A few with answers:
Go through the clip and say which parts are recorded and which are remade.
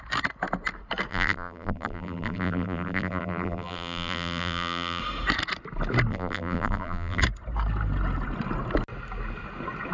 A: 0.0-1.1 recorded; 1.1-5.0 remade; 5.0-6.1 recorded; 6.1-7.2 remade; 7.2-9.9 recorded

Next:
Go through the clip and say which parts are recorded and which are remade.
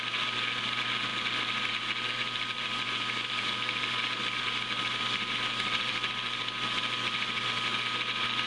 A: 0.0-8.5 recorded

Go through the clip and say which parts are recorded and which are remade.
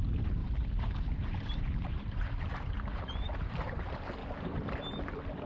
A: 0.0-0.4 recorded; 0.4-3.7 remade; 3.7-4.2 recorded; 4.2-5.1 remade; 5.1-5.5 recorded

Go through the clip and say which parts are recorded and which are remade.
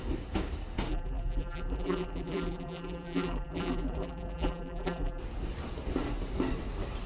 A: 0.0-0.9 recorded; 0.9-5.2 remade; 5.2-7.1 recorded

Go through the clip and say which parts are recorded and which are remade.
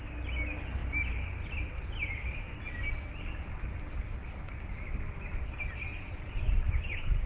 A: 0.0-0.8 recorded; 0.8-2.9 remade; 2.9-7.3 recorded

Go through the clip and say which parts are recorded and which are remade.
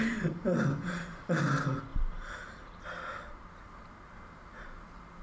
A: 0.0-1.0 remade; 1.0-1.9 recorded; 1.9-2.8 remade; 2.8-5.2 recorded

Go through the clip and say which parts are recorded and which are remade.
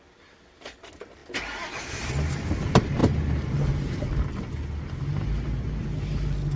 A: 0.0-6.6 recorded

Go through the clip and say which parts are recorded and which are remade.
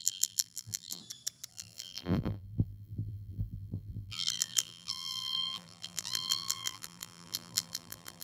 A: 0.0-1.0 remade; 1.0-1.5 recorded; 1.5-8.2 remade